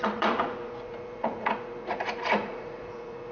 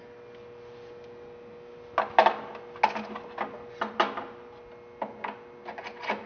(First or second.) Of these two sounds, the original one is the second